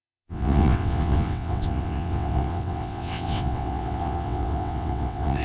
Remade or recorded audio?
remade